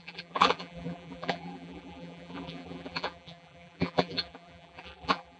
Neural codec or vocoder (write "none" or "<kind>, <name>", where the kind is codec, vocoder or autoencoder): vocoder, BigVGAN v2